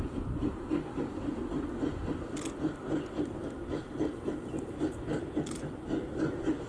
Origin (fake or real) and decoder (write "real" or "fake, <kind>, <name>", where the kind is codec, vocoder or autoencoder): real